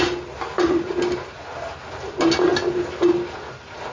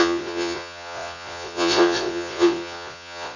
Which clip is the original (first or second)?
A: first